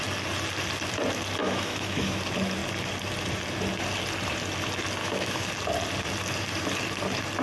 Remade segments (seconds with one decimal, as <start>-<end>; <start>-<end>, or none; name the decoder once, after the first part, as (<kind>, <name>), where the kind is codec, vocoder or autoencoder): 1.4-2.2 (autoencoder, DAC-VAE); 5.0-5.5